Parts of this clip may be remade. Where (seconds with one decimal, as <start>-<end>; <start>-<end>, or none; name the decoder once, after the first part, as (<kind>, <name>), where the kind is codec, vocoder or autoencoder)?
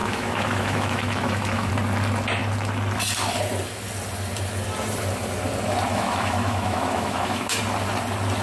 0.0-1.7 (autoencoder, DAC-VAE); 5.9-7.6